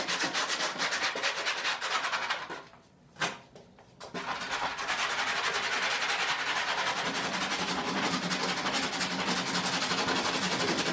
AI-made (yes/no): no